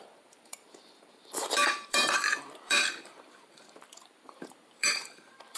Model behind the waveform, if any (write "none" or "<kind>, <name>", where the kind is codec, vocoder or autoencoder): vocoder, BigVGAN v2